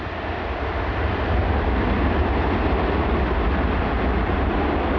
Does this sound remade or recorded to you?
recorded